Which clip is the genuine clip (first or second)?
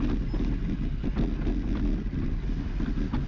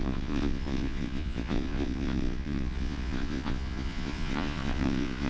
first